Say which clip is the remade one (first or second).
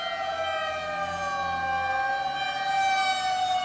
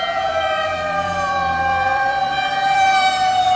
second